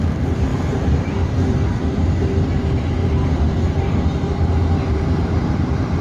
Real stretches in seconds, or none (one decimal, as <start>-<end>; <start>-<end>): 0.5-1.5; 3.0-4.9